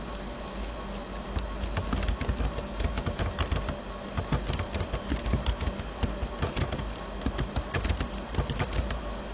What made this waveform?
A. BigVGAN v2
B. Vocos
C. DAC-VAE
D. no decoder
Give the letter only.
D